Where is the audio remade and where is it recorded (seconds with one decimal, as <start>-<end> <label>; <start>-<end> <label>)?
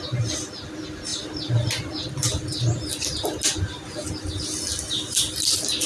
0.0-5.9 recorded